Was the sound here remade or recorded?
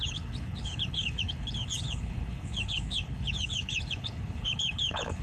remade